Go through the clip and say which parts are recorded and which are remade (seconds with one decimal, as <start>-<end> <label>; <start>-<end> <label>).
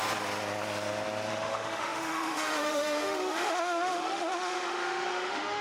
0.0-1.3 recorded; 1.3-5.6 remade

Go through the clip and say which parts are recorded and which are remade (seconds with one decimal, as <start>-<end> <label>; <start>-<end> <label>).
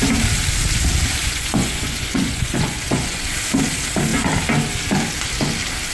0.0-1.2 recorded; 1.2-3.2 remade; 3.2-5.9 recorded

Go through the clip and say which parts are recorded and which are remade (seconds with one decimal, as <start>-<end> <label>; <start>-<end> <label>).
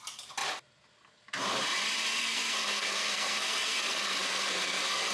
0.0-2.2 recorded; 2.2-5.1 remade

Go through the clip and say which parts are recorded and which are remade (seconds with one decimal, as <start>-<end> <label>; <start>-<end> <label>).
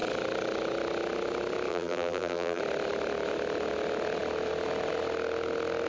0.0-1.7 recorded; 1.7-2.6 remade; 2.6-5.9 recorded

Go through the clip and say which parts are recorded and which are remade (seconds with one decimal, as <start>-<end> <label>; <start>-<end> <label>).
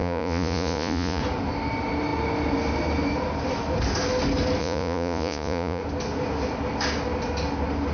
0.0-1.2 remade; 1.2-4.6 recorded; 4.6-5.8 remade; 5.8-7.9 recorded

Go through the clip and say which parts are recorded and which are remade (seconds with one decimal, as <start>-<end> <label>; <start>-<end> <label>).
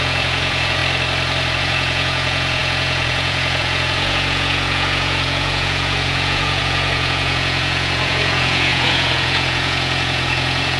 0.0-0.8 remade; 0.8-1.6 recorded; 1.6-10.8 remade